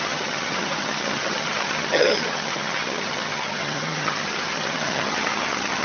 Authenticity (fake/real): fake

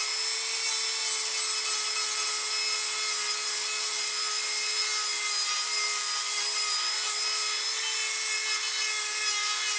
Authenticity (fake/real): real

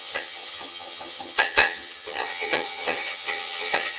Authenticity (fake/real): fake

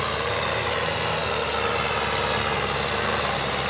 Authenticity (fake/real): real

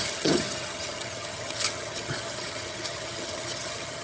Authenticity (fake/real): fake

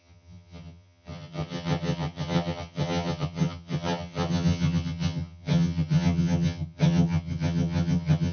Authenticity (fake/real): fake